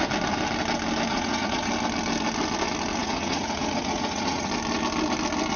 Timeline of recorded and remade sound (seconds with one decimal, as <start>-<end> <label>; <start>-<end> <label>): 0.0-1.1 recorded; 1.1-1.7 remade; 1.7-3.0 recorded; 3.0-4.5 remade; 4.5-5.6 recorded